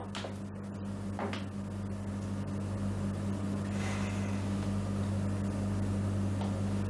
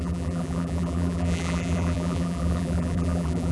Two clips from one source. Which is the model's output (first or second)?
second